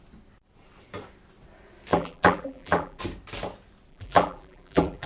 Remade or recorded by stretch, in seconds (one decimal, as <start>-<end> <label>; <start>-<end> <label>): 0.0-1.9 recorded; 1.9-3.0 remade; 3.0-3.9 recorded; 3.9-5.1 remade